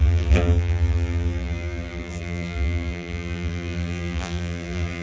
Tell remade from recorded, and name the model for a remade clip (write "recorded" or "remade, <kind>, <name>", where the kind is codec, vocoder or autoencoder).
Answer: remade, vocoder, BigVGAN v2